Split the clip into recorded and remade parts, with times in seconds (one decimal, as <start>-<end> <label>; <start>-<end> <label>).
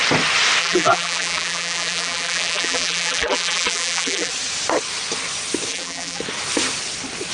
0.0-0.6 recorded; 0.6-4.3 remade; 4.3-5.7 recorded; 5.7-6.2 remade; 6.2-7.3 recorded